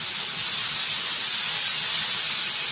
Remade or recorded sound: recorded